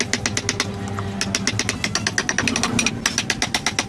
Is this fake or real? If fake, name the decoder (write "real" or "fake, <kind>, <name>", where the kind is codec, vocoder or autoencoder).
real